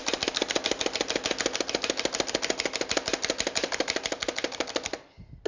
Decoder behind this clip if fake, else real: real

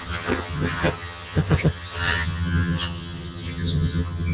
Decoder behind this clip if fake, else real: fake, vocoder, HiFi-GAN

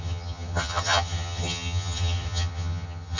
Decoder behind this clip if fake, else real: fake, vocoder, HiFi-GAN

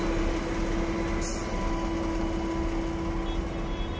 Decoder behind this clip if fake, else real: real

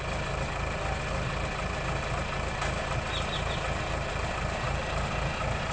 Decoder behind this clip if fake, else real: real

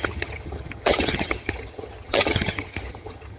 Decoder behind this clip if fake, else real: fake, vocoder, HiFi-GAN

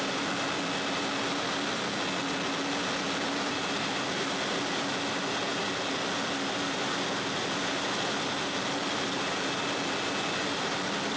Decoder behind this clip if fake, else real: real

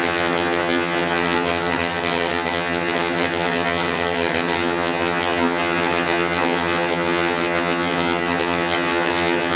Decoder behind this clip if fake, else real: fake, vocoder, HiFi-GAN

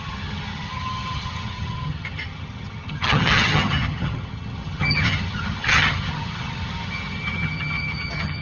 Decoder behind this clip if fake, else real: fake, vocoder, HiFi-GAN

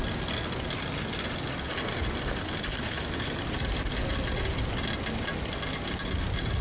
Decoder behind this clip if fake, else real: real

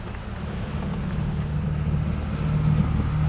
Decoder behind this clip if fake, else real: real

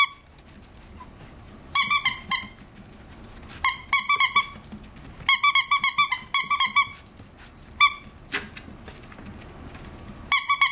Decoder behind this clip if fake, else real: real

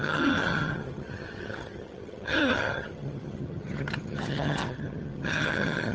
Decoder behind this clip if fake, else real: fake, vocoder, HiFi-GAN